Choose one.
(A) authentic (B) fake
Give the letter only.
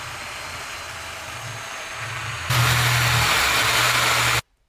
A